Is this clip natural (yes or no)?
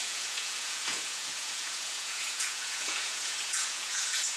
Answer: no